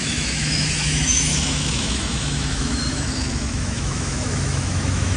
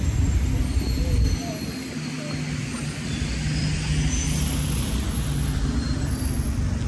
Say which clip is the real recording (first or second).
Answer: second